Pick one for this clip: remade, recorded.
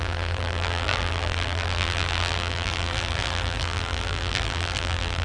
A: remade